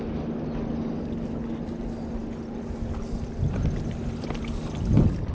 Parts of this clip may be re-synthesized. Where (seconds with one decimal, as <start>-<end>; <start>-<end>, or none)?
none